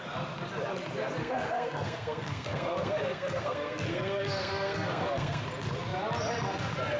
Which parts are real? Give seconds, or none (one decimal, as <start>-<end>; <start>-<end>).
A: 0.0-1.2; 5.4-7.0

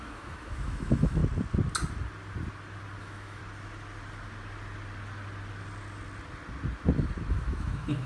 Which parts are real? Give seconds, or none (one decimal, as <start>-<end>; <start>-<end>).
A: 1.2-3.0; 3.4-7.3

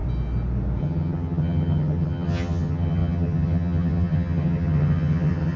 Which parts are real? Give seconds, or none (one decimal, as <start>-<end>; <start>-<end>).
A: 0.0-0.8